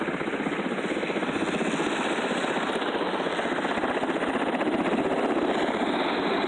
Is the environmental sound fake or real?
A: real